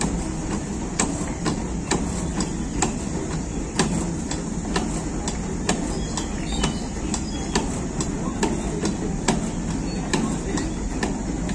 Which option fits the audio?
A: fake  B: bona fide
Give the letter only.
B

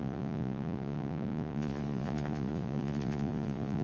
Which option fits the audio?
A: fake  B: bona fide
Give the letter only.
A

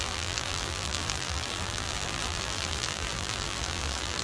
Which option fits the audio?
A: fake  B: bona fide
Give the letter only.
A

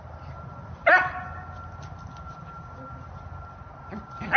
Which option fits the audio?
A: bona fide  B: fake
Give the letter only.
A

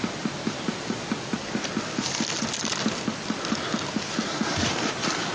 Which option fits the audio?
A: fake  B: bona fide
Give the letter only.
B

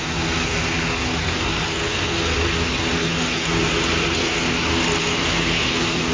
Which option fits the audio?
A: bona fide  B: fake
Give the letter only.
A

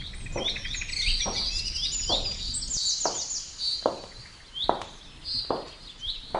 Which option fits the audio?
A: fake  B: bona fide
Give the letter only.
B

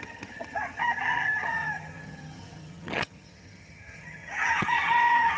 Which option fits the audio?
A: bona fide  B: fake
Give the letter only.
B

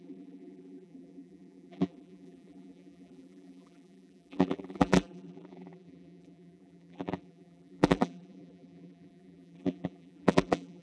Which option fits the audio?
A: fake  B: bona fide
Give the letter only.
A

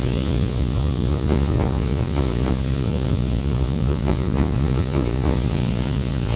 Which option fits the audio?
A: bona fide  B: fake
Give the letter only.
B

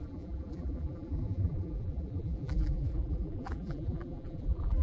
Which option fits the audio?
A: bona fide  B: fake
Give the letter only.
B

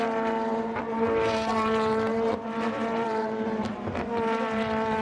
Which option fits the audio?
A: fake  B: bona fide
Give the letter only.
A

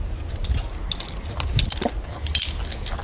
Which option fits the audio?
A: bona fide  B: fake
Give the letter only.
A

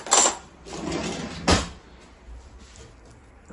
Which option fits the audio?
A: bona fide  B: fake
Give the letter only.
A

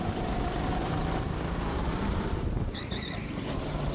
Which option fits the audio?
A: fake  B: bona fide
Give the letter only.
A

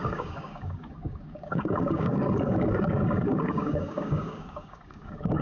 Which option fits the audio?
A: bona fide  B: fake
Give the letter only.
B